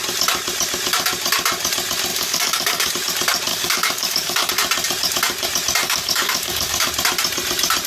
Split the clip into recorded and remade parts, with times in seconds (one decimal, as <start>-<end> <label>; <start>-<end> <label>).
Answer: 0.0-2.1 recorded; 2.1-2.9 remade; 2.9-3.5 recorded; 3.5-4.5 remade; 4.5-5.8 recorded; 5.8-6.9 remade; 6.9-7.9 recorded